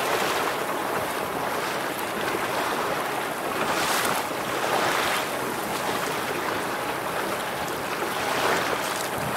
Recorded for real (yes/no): yes